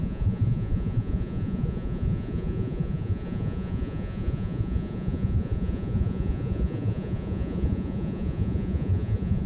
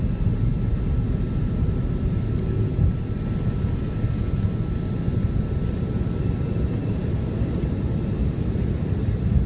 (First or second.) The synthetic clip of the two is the first